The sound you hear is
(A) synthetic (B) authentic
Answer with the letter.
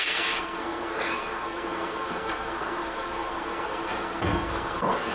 A